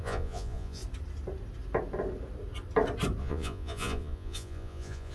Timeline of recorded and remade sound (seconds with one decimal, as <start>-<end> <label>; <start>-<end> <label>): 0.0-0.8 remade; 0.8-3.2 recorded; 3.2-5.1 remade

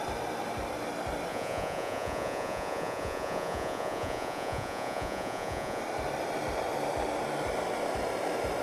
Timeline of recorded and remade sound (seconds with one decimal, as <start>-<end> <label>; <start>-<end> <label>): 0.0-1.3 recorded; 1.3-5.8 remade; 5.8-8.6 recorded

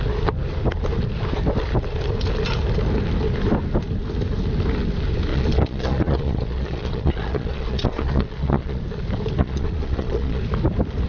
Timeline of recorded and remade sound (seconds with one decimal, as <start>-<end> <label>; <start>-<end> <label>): 0.0-5.3 recorded; 5.3-8.8 remade; 8.8-9.4 recorded; 9.4-10.4 remade; 10.4-11.1 recorded

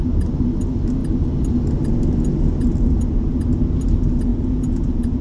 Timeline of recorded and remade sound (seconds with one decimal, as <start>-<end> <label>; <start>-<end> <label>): 0.0-4.3 recorded; 4.3-5.2 remade

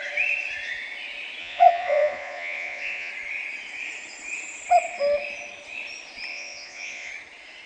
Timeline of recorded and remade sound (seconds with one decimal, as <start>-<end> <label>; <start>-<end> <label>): 0.0-1.4 recorded; 1.4-3.1 remade; 3.1-6.3 recorded; 6.3-7.1 remade; 7.1-7.7 recorded

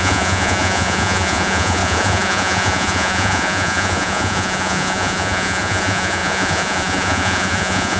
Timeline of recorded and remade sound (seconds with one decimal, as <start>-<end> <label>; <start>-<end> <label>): 0.0-8.0 remade